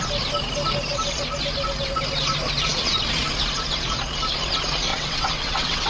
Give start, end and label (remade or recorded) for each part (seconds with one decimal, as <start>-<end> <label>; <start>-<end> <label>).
0.0-4.9 recorded; 4.9-5.9 remade